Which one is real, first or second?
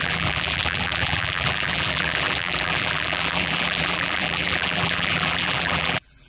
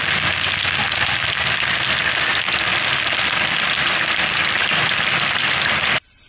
second